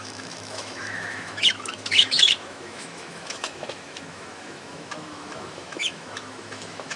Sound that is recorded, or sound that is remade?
remade